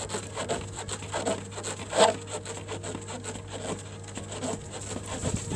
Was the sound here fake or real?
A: real